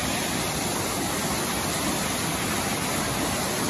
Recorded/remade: recorded